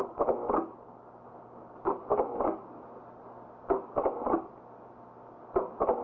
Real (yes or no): yes